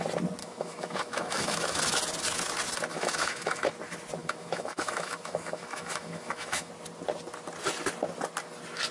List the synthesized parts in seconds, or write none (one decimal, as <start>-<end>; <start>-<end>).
0.4-1.8; 2.9-3.7; 4.2-6.7

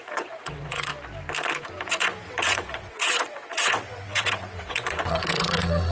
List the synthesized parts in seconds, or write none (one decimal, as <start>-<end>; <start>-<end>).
0.0-0.9; 1.8-5.9

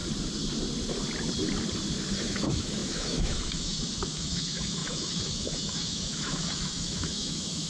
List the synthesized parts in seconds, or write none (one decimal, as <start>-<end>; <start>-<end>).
2.2-7.7